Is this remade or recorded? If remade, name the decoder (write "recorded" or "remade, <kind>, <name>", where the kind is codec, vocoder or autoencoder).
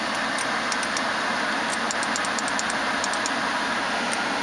recorded